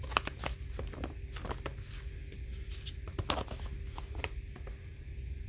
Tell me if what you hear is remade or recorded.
recorded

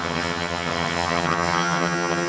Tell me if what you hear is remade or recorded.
remade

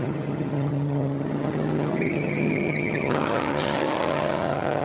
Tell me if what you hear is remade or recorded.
remade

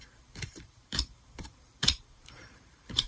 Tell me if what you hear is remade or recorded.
remade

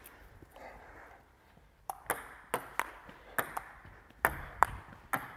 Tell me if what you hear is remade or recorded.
recorded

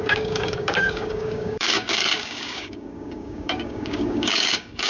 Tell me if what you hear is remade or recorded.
remade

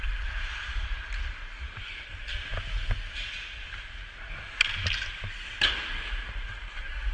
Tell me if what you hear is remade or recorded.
recorded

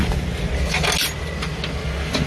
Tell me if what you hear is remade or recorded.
recorded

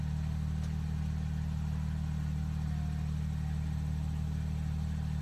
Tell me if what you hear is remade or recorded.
recorded